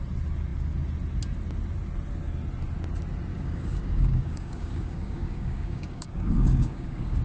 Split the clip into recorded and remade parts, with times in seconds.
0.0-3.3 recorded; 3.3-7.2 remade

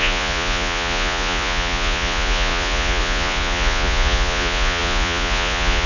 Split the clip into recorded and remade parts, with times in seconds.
0.0-5.9 remade

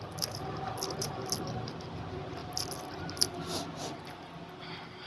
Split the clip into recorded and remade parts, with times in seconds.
0.0-5.1 remade

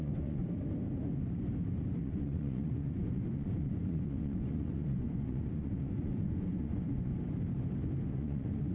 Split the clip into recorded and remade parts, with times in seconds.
0.0-0.4 remade; 0.4-2.0 recorded; 2.0-7.1 remade; 7.1-8.1 recorded; 8.1-8.7 remade

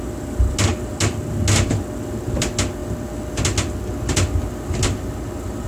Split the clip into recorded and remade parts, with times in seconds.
0.0-5.7 recorded

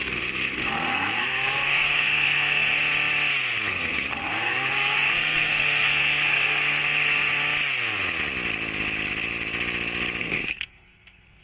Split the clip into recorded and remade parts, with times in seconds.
0.0-2.8 remade; 2.8-3.7 recorded; 3.7-7.3 remade; 7.3-10.2 recorded; 10.2-11.4 remade

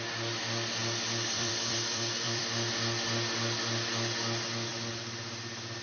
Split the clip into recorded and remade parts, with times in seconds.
0.0-0.8 recorded; 0.8-2.7 remade; 2.7-5.8 recorded